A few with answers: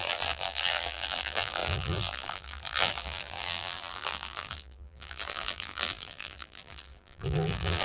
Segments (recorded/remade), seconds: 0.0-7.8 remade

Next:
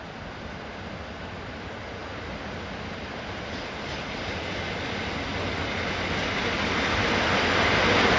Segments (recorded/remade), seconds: 0.0-8.2 recorded

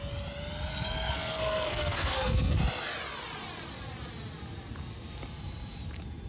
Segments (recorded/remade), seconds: 0.0-0.7 recorded; 0.7-2.6 remade; 2.6-6.3 recorded

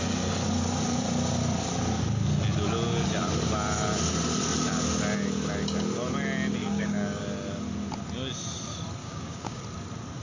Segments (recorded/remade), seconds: 0.0-6.6 recorded; 6.6-7.2 remade; 7.2-9.0 recorded; 9.0-9.6 remade; 9.6-10.2 recorded

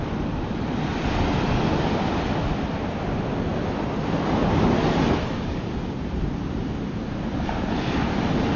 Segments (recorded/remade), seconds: 0.0-8.6 recorded

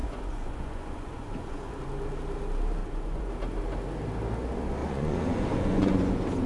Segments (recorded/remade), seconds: 0.0-1.8 remade; 1.8-2.8 recorded; 2.8-3.3 remade; 3.3-4.8 recorded; 4.8-6.1 remade; 6.1-6.5 recorded

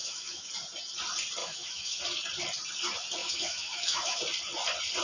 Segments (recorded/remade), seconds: 0.0-0.5 remade; 0.5-1.4 recorded; 1.4-2.0 remade; 2.0-3.2 recorded; 3.2-4.2 remade; 4.2-5.0 recorded

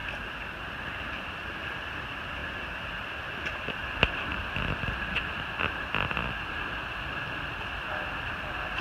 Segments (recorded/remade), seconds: 0.0-1.0 recorded; 1.0-2.4 remade; 2.4-3.4 recorded; 3.4-8.8 remade